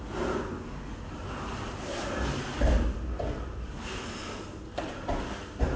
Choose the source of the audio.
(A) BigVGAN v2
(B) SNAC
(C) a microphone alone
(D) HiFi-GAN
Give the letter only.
C